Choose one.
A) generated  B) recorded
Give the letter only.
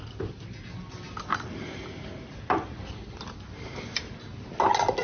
B